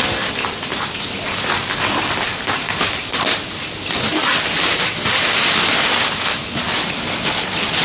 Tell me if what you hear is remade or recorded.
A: remade